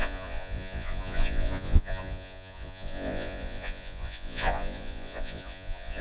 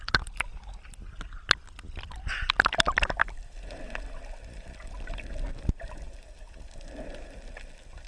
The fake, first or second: first